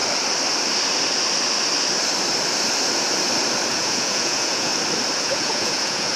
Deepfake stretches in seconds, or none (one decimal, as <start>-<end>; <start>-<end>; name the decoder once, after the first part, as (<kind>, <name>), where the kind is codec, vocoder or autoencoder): 3.7-4.7 (vocoder, Vocos); 5.2-6.2